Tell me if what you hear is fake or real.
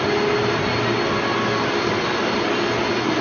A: real